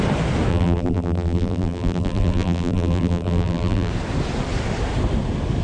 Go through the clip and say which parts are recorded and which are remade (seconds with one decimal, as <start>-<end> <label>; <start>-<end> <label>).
0.0-0.5 recorded; 0.5-3.9 remade; 3.9-5.6 recorded